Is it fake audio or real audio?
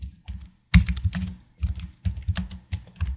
real